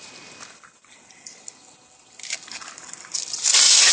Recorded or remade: recorded